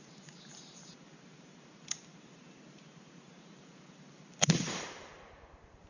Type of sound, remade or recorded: remade